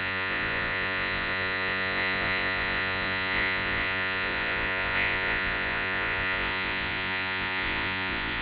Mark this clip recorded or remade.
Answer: remade